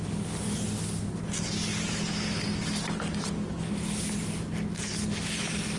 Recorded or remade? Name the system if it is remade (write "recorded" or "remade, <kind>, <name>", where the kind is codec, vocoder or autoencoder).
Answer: recorded